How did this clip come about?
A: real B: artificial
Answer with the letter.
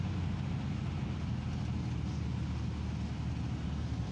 A